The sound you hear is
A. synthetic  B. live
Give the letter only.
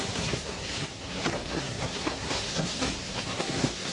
A